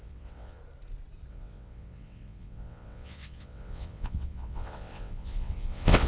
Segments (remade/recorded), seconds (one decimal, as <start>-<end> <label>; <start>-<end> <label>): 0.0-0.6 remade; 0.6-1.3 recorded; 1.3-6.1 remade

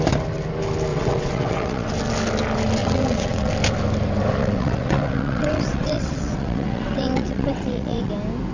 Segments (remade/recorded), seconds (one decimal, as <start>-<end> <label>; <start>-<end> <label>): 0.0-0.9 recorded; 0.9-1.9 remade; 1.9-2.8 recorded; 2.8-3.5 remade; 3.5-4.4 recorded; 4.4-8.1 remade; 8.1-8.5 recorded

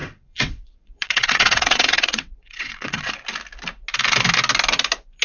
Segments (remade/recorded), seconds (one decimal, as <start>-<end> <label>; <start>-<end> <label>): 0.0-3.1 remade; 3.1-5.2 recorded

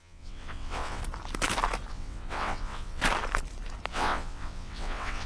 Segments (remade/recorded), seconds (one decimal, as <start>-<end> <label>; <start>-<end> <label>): 0.0-1.0 remade; 1.0-1.9 recorded; 1.9-3.0 remade; 3.0-3.9 recorded; 3.9-5.3 remade

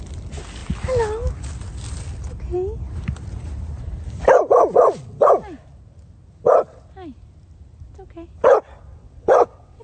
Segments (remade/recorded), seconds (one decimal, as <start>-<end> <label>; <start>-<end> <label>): 0.0-8.9 recorded; 8.9-9.8 remade

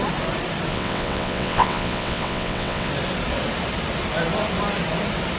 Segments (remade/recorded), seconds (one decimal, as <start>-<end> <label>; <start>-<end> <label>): 0.0-0.7 recorded; 0.7-2.9 remade; 2.9-5.4 recorded

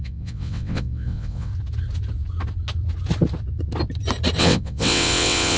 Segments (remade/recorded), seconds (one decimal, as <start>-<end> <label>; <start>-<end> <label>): 0.0-1.5 remade; 1.5-4.4 recorded; 4.4-5.6 remade